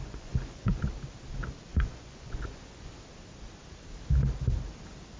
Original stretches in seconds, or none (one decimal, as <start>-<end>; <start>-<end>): 0.8-1.7; 2.9-5.2